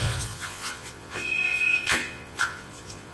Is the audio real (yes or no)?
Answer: no